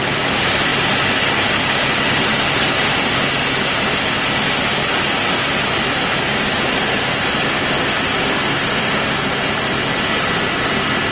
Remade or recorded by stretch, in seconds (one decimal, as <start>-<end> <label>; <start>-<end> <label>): 0.0-11.1 recorded